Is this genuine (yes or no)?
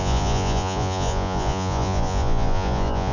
no